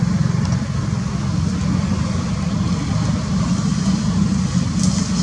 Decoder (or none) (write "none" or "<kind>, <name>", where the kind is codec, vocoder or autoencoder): none